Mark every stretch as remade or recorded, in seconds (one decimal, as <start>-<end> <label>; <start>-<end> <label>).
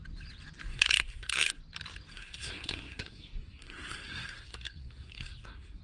0.0-0.7 recorded; 0.7-1.5 remade; 1.5-2.1 recorded; 2.1-5.8 remade